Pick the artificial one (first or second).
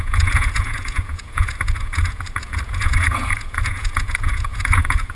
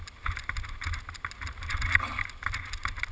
first